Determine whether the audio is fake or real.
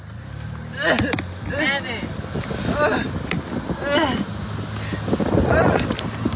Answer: real